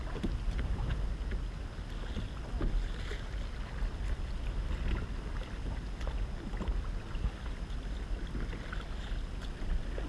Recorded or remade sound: recorded